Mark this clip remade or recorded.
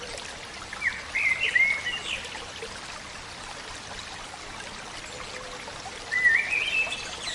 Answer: recorded